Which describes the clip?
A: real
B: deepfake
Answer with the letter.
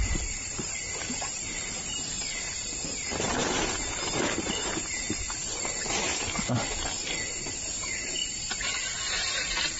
B